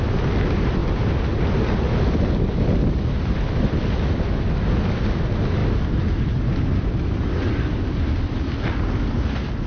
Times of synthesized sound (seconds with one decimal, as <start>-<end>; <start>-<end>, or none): none